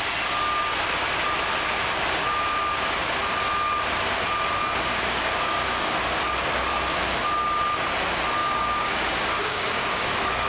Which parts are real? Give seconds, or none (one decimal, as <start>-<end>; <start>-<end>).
0.0-4.9; 6.0-8.4; 10.1-10.5